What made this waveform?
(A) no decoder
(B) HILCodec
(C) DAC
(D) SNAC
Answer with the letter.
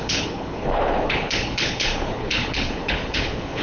B